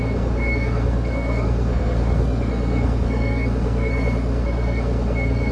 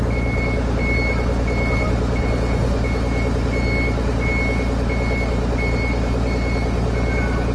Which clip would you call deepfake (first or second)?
first